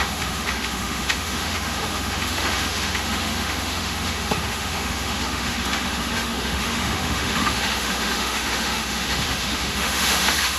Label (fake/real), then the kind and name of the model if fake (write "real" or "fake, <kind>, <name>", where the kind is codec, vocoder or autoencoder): fake, autoencoder, DAC-VAE